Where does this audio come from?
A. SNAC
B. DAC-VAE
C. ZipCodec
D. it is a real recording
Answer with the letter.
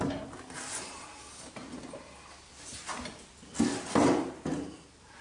D